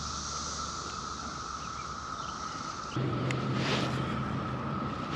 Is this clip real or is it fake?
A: fake